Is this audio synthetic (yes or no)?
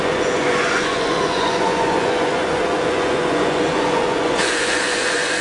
yes